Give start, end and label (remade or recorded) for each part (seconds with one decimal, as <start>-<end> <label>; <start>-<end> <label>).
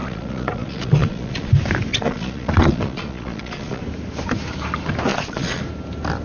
0.0-1.5 remade; 1.5-1.9 recorded; 1.9-3.8 remade; 3.8-5.1 recorded; 5.1-5.6 remade; 5.6-6.2 recorded